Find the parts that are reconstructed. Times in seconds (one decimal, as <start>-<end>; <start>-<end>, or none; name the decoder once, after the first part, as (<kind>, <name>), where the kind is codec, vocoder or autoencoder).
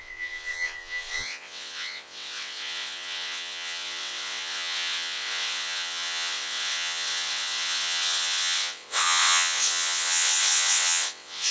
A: 0.0-11.5 (vocoder, WaveNeXt)